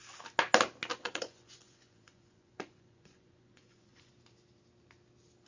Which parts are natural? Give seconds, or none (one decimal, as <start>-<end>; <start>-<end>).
0.0-0.9; 4.1-5.5